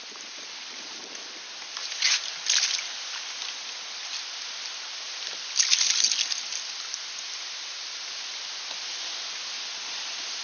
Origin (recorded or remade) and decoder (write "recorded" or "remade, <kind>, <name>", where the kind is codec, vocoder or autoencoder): recorded